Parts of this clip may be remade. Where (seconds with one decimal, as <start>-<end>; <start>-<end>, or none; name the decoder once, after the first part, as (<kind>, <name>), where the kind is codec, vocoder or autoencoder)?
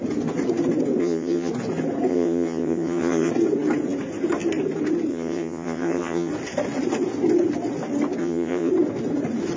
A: 1.0-1.5 (vocoder, HiFi-GAN); 2.1-3.3; 5.1-6.3; 8.2-8.7